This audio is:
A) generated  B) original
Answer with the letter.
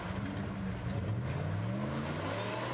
B